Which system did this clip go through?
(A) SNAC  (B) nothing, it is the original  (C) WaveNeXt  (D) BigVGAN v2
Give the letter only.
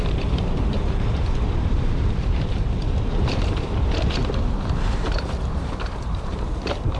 D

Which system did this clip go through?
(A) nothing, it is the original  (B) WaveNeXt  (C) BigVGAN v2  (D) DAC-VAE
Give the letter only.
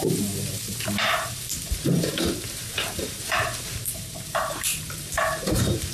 C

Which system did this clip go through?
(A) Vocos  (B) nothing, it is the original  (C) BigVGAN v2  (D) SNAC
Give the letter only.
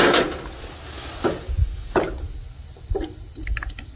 B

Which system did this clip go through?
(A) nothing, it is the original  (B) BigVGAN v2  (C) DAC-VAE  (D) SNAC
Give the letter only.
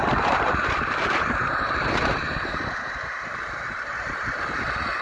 B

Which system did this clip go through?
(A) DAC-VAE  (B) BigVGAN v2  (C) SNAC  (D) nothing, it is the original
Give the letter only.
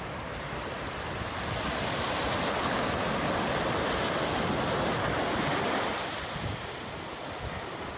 D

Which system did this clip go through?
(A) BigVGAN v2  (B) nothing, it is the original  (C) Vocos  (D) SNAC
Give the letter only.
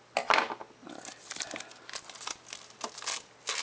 B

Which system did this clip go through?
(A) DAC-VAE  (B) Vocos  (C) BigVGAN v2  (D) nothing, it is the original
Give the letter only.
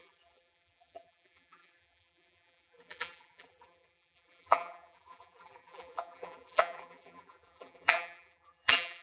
C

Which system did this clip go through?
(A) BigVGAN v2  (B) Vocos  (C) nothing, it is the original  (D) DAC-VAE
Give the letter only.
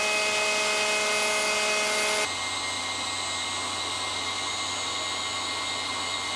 C